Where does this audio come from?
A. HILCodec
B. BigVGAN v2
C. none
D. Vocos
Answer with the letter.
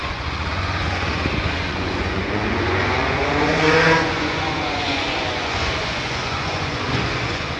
D